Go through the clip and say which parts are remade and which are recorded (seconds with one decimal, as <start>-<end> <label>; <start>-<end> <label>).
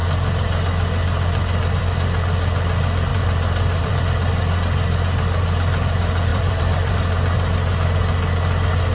0.0-3.1 recorded; 3.1-4.0 remade; 4.0-6.3 recorded; 6.3-6.9 remade; 6.9-8.9 recorded